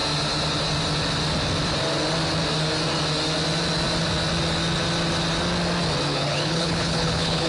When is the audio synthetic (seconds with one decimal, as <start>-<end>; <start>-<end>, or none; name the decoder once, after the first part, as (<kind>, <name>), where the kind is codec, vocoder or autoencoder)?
6.1-7.5 (codec, HILCodec)